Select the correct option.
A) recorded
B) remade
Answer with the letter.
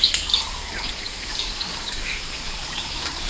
B